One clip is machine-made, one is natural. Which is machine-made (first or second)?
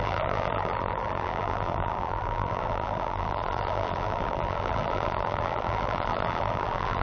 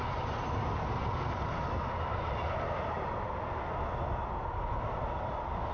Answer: first